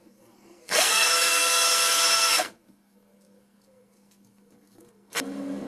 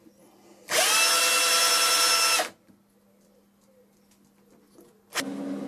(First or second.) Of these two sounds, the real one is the second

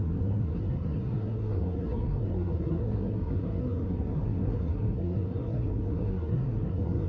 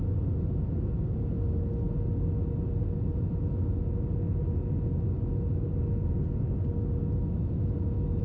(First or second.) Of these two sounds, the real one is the second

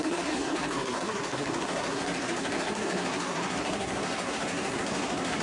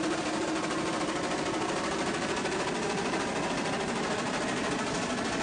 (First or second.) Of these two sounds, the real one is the second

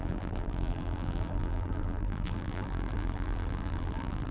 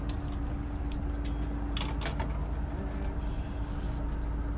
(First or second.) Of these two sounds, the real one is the second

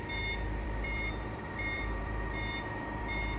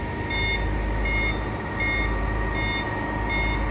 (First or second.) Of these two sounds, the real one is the second